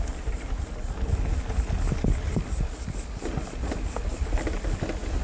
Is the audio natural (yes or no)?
yes